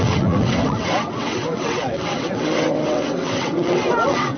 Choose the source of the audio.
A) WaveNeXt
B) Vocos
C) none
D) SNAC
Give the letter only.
A